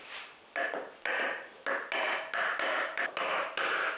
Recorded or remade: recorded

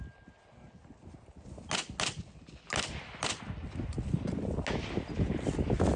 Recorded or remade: recorded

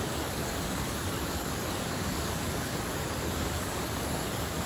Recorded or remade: remade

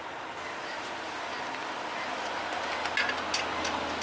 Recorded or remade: recorded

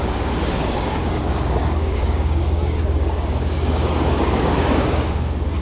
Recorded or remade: remade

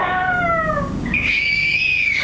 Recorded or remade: remade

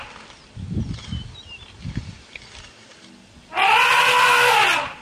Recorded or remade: recorded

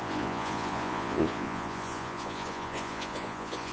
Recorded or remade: remade